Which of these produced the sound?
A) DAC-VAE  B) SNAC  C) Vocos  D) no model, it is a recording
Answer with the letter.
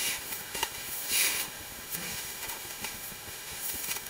A